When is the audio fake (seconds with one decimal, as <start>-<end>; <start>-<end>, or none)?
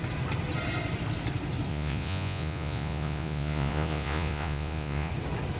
1.7-5.1